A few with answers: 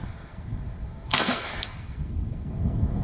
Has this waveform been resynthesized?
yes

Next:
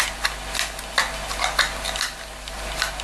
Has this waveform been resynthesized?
no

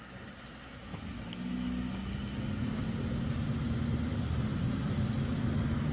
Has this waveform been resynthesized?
no